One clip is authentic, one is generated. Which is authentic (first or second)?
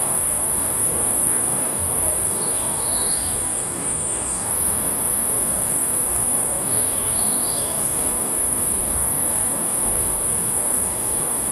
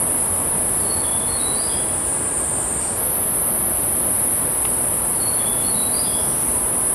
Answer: second